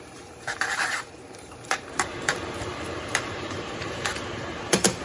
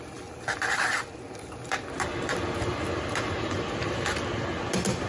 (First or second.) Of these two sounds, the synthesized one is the first